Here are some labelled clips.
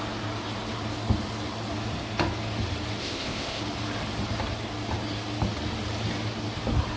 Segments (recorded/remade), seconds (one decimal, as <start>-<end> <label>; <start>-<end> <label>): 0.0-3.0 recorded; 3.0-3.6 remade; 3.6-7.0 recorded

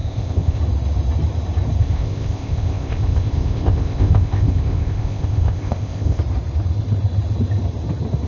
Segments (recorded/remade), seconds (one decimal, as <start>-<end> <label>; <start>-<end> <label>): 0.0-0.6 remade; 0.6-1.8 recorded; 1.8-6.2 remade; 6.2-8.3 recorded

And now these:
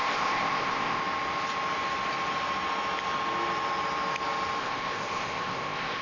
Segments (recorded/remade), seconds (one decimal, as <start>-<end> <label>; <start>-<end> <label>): 0.0-1.0 remade; 1.0-4.6 recorded; 4.6-6.0 remade

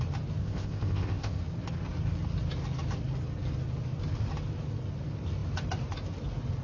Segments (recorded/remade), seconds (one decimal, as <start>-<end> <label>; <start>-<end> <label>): 0.0-0.4 recorded; 0.4-1.4 remade; 1.4-6.6 recorded

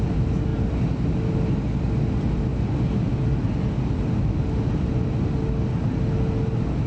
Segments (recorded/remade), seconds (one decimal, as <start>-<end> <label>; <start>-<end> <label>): 0.0-6.9 recorded

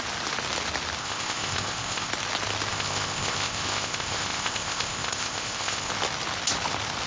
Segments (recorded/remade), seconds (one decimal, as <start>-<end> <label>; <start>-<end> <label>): 0.0-1.0 recorded; 1.0-2.1 remade; 2.1-2.7 recorded; 2.7-5.9 remade; 5.9-7.1 recorded

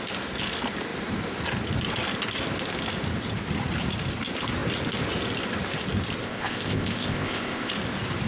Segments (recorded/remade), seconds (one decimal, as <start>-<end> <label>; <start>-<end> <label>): 0.0-6.2 recorded; 6.2-7.7 remade; 7.7-8.3 recorded

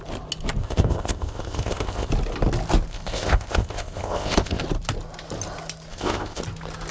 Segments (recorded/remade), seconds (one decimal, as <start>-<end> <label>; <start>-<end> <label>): 0.0-0.6 recorded; 0.6-2.1 remade; 2.1-2.9 recorded; 2.9-4.6 remade; 4.6-5.9 recorded; 5.9-6.4 remade; 6.4-6.9 recorded